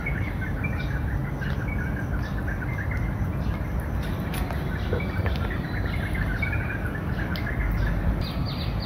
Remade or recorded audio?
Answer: recorded